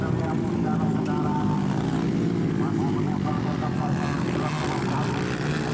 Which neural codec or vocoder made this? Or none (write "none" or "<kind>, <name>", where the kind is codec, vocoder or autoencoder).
none